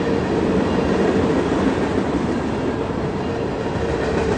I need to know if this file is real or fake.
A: real